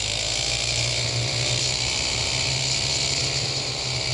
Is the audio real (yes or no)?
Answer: yes